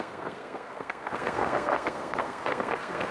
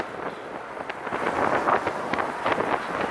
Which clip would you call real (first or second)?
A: second